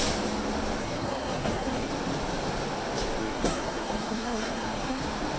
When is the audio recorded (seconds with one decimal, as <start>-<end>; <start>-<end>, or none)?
0.0-0.8; 1.9-3.2; 5.0-5.4